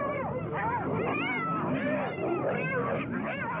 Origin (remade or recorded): remade